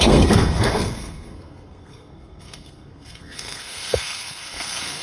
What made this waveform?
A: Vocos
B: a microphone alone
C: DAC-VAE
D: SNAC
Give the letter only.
D